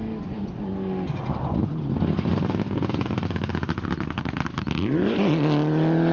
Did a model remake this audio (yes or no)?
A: no